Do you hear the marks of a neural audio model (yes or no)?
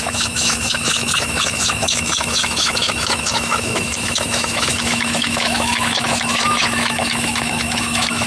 yes